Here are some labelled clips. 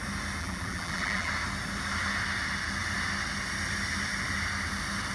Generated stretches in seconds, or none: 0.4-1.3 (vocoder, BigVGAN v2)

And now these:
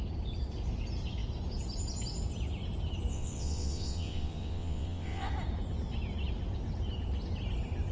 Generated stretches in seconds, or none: 3.1-5.3 (vocoder, WaveNeXt)

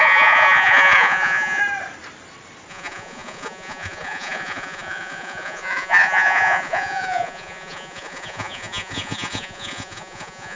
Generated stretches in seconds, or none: 0.0-1.6 (vocoder, Vocos); 2.7-10.6